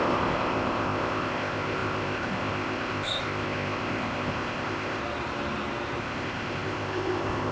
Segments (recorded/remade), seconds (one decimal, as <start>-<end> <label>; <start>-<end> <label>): 0.0-5.0 remade; 5.0-6.0 recorded; 6.0-7.5 remade

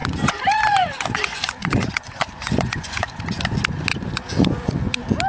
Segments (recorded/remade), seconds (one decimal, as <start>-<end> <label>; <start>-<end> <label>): 0.0-3.2 remade; 3.2-3.9 recorded; 3.9-4.7 remade; 4.7-5.3 recorded

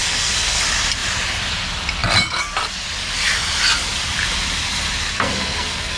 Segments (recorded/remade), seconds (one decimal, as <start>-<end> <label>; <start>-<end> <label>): 0.0-0.6 remade; 0.6-5.1 recorded; 5.1-6.0 remade

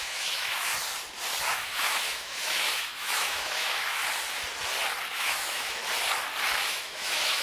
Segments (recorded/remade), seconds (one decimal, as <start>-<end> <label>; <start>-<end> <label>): 0.0-0.7 remade; 0.7-1.4 recorded; 1.4-4.0 remade; 4.0-5.1 recorded; 5.1-5.8 remade; 5.8-6.7 recorded; 6.7-7.4 remade

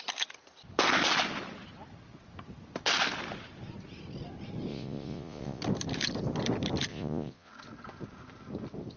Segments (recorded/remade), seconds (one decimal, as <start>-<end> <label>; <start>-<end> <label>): 0.0-4.7 recorded; 4.7-5.6 remade; 5.6-6.9 recorded; 6.9-7.5 remade; 7.5-9.0 recorded